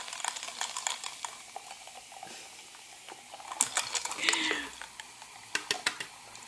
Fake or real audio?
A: real